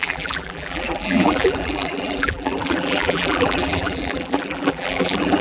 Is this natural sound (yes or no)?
no